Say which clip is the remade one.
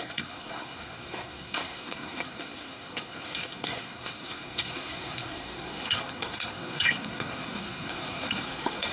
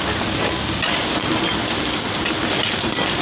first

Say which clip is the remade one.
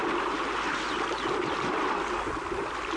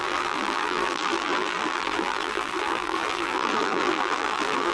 second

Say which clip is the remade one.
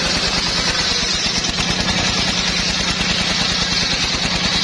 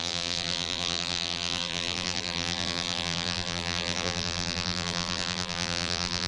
second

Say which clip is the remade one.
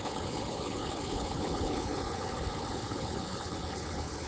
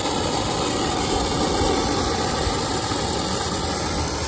first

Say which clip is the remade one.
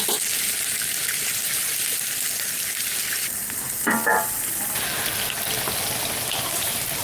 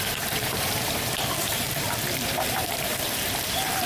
second